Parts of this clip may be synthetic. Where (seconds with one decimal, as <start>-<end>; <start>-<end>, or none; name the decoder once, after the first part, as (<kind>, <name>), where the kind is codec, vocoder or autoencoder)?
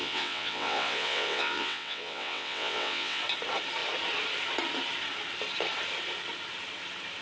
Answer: 0.0-3.2 (vocoder, WaveNeXt)